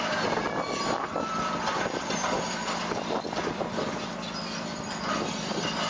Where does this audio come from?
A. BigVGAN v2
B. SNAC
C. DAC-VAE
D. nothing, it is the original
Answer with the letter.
D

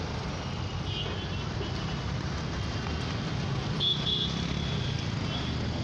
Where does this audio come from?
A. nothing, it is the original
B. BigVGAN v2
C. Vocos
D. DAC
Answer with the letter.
A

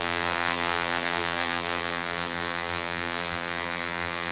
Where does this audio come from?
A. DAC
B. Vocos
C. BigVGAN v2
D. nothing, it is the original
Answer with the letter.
C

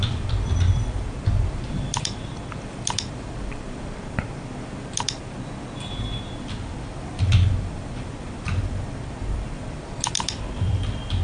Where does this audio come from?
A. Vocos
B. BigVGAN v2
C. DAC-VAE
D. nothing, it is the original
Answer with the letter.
B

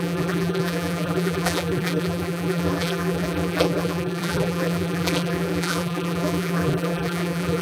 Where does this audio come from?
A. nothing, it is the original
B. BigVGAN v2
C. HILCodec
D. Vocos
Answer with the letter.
B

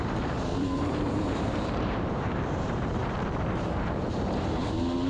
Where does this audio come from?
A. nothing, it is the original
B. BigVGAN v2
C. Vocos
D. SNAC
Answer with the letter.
B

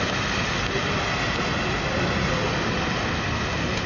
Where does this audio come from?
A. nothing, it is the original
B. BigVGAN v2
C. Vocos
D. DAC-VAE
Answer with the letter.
A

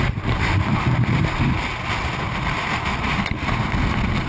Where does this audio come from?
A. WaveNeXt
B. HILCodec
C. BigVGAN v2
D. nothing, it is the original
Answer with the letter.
C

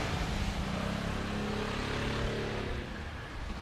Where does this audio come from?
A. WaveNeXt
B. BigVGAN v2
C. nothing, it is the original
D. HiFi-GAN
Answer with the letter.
C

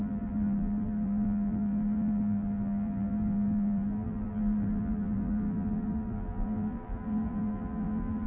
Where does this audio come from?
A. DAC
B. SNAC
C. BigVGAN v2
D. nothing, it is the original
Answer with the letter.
C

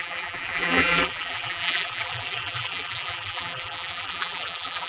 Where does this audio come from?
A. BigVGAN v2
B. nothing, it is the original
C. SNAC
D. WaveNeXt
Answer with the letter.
A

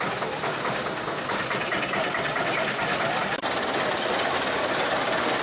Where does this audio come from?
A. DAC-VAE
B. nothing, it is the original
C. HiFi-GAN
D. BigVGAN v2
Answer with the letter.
B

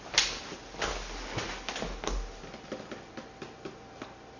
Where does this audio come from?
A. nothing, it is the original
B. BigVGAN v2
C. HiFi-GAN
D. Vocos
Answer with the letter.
A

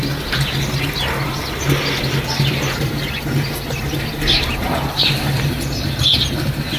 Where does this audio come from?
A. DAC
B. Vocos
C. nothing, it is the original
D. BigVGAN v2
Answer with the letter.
C